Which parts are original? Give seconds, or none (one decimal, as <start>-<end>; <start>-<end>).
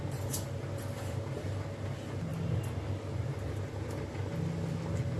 0.0-5.2